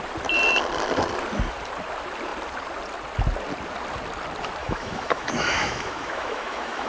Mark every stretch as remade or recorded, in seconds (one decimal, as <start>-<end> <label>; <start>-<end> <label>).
0.0-4.6 recorded; 4.6-6.9 remade